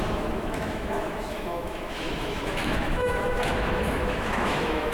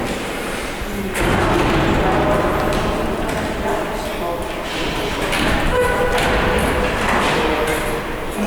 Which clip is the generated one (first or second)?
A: first